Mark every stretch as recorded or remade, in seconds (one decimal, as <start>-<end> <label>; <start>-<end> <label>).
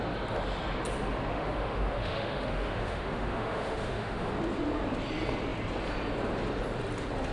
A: 0.0-1.3 recorded; 1.3-4.3 remade; 4.3-7.3 recorded